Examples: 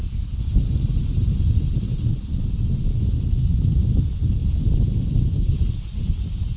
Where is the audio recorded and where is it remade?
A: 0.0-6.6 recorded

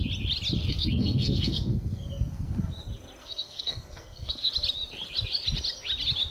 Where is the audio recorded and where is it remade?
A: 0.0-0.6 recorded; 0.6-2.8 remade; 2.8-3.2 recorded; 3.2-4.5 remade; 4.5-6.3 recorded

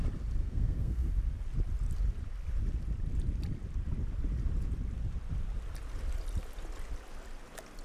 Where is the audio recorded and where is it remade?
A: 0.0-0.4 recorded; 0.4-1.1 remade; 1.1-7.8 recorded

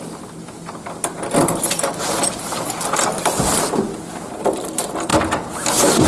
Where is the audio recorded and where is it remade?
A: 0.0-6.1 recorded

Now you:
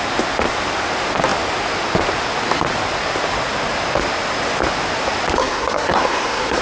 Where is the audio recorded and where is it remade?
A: 0.0-5.4 recorded; 5.4-6.6 remade

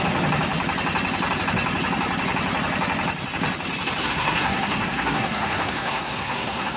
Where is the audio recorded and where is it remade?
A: 0.0-4.0 recorded; 4.0-6.8 remade

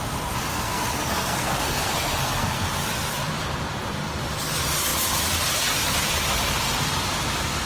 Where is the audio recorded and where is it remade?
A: 0.0-0.5 recorded; 0.5-2.6 remade; 2.6-7.7 recorded